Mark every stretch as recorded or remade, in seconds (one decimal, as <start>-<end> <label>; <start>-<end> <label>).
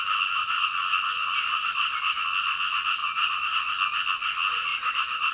0.0-1.2 recorded; 1.2-2.2 remade; 2.2-3.0 recorded; 3.0-3.6 remade; 3.6-4.7 recorded; 4.7-5.3 remade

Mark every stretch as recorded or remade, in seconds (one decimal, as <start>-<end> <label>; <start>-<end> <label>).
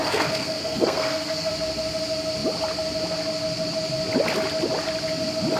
0.0-1.5 remade; 1.5-5.6 recorded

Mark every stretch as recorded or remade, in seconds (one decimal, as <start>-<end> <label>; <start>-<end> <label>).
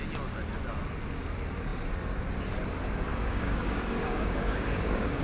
0.0-3.1 recorded; 3.1-5.2 remade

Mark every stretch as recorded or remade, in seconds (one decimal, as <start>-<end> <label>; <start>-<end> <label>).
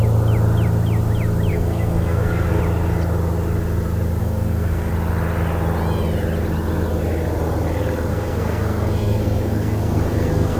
0.0-1.5 recorded; 1.5-2.6 remade; 2.6-4.2 recorded; 4.2-4.9 remade; 4.9-8.1 recorded; 8.1-10.6 remade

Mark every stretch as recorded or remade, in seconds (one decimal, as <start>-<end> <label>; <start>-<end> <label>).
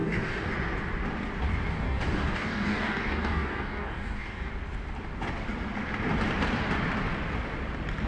0.0-0.5 remade; 0.5-1.7 recorded; 1.7-4.5 remade; 4.5-8.1 recorded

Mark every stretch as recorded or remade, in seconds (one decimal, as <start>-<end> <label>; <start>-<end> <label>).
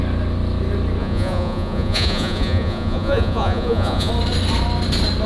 0.0-1.0 recorded; 1.0-4.1 remade; 4.1-5.3 recorded